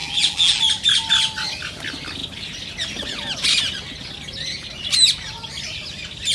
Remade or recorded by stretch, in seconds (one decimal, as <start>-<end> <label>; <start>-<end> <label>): 0.0-0.6 remade; 0.6-6.3 recorded